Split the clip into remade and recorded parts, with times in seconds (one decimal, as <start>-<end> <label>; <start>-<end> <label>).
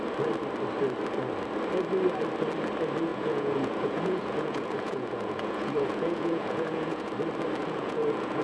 0.0-3.1 recorded; 3.1-7.1 remade; 7.1-7.6 recorded; 7.6-8.4 remade